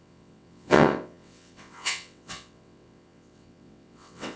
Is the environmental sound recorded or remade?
remade